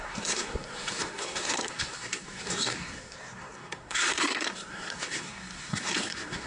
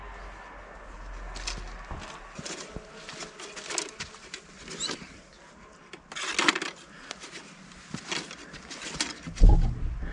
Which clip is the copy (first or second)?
first